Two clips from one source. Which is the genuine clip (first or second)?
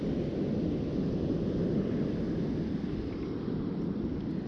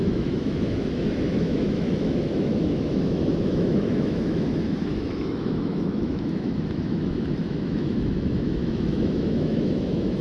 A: first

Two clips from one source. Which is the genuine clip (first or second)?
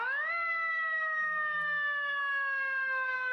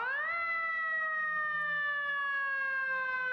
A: second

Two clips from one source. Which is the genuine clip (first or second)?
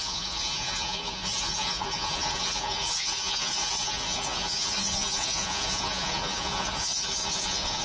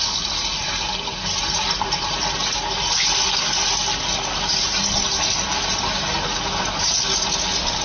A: second